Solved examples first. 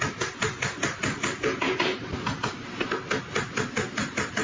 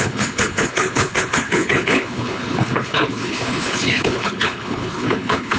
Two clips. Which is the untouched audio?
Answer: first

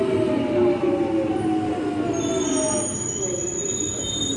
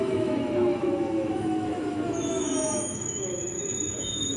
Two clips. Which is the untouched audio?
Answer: first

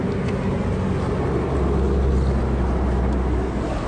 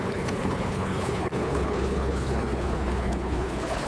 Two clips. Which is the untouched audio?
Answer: first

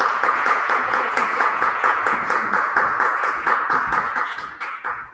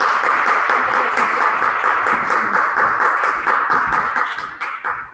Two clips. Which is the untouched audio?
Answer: second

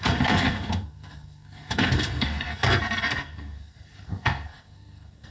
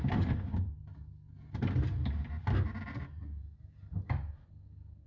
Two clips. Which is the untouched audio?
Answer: second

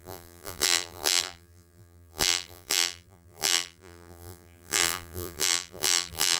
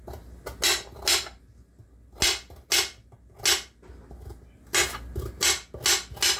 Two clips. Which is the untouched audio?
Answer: second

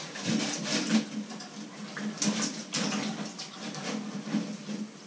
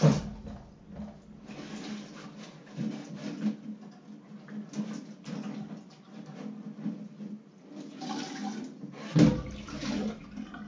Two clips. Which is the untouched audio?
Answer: second